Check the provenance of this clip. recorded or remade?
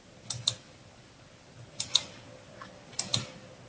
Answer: recorded